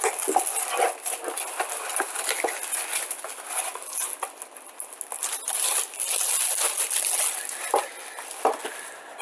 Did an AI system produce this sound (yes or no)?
no